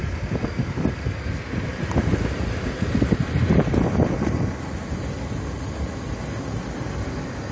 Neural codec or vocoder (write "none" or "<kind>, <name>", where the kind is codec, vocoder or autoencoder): none